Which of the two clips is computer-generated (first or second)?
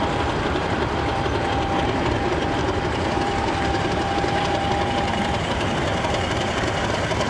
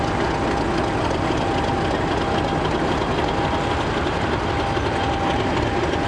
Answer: first